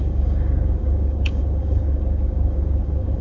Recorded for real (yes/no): no